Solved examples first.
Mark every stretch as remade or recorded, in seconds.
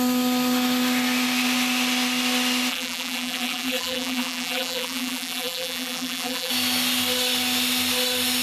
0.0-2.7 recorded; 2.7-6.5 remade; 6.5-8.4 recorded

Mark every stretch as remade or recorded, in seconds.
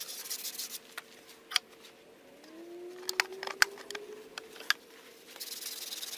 0.0-6.2 recorded